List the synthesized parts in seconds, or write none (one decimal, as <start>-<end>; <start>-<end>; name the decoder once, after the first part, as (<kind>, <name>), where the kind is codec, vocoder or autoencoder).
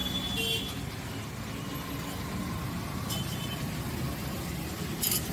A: 3.0-5.3 (vocoder, BigVGAN v2)